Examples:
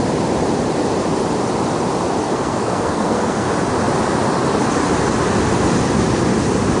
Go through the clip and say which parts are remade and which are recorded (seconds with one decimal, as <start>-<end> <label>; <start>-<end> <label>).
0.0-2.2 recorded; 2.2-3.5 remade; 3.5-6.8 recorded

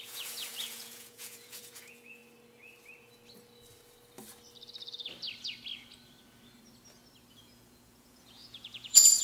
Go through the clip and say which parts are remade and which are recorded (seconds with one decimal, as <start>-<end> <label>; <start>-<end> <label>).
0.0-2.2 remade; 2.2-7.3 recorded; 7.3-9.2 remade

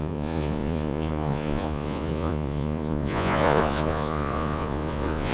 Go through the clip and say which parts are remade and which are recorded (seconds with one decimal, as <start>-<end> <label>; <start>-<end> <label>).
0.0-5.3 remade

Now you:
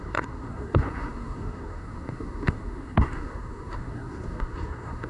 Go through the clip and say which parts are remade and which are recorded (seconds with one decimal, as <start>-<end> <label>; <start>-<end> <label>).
0.0-5.1 remade